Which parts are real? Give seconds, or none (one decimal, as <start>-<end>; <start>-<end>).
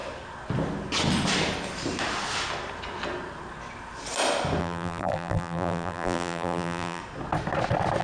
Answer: 0.0-4.6; 7.0-8.0